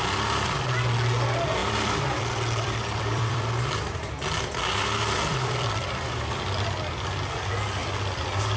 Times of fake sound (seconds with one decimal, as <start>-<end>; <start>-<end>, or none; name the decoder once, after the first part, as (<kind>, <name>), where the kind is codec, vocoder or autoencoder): 1.6-4.1 (vocoder, BigVGAN v2); 5.3-6.9; 7.8-8.6